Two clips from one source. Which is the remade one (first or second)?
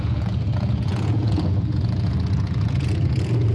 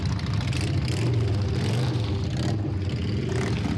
first